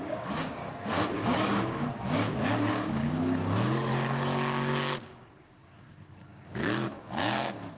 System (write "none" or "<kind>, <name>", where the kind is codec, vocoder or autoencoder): codec, DAC